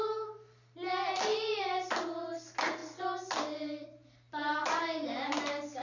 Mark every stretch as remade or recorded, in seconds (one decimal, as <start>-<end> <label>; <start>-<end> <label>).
0.0-5.8 recorded